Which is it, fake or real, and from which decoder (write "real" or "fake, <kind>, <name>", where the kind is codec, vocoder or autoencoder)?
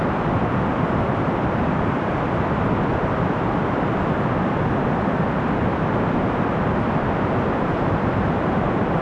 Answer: fake, vocoder, BigVGAN v2